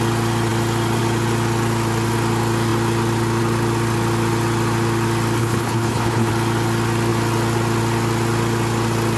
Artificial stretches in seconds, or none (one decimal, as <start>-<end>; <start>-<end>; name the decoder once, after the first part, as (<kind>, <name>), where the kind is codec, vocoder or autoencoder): 5.4-6.3 (codec, HILCodec)